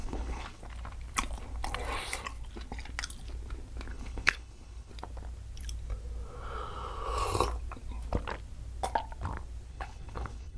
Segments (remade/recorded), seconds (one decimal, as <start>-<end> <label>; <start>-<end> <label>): 0.0-0.6 remade; 0.6-3.9 recorded; 3.9-4.9 remade; 4.9-9.7 recorded; 9.7-10.6 remade